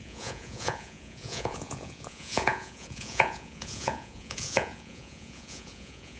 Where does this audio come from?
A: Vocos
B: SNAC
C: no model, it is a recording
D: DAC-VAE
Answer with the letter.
A